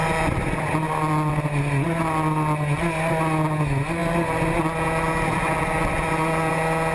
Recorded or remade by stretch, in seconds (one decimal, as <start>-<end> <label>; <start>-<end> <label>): 0.0-6.9 recorded